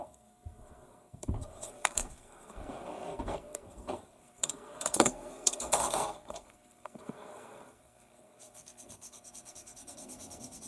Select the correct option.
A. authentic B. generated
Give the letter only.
B